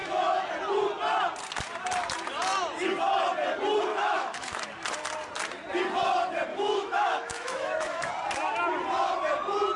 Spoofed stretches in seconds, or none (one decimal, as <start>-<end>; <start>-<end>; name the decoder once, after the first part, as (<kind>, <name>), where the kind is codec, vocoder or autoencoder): 0.0-0.5 (autoencoder, DAC-VAE); 3.9-4.6; 6.5-8.1